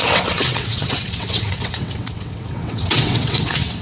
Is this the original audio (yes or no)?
no